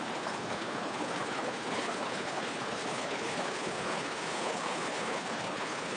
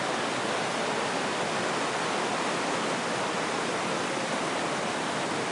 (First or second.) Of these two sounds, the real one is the second